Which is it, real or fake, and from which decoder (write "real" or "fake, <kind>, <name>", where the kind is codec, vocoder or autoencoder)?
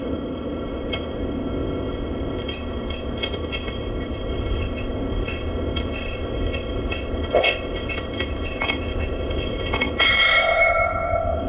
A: fake, codec, ZipCodec